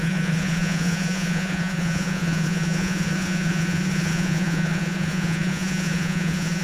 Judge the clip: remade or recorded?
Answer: remade